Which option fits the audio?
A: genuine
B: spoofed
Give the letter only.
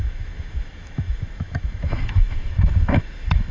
B